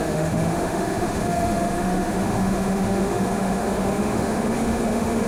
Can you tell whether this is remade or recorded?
remade